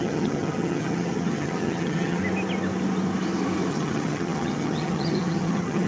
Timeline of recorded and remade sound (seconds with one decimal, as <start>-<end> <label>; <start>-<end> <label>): 0.0-2.2 remade; 2.2-3.7 recorded; 3.7-5.9 remade